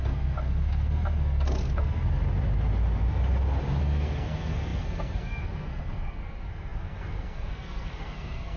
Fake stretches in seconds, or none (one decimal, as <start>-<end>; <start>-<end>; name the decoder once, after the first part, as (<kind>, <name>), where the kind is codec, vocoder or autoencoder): 0.0-2.2 (codec, SNAC); 3.8-8.6